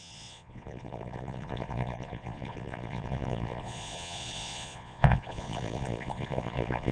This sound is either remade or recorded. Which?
remade